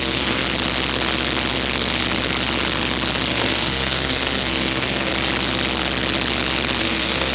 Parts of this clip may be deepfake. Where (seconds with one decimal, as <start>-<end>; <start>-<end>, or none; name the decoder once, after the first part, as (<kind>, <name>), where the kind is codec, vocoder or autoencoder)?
0.0-0.4 (codec, SNAC); 3.3-5.1; 6.8-7.3